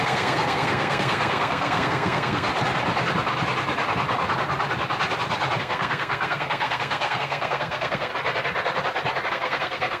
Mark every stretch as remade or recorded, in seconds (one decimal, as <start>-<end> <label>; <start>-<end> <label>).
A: 0.0-2.5 remade; 2.5-5.6 recorded; 5.6-8.1 remade; 8.1-9.3 recorded; 9.3-10.0 remade